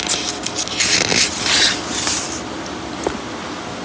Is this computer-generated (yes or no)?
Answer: no